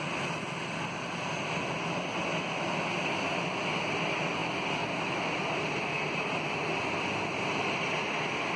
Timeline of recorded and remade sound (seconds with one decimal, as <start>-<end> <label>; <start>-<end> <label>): 0.0-8.6 recorded